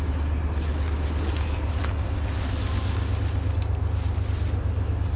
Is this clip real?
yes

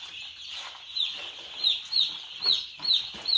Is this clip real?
yes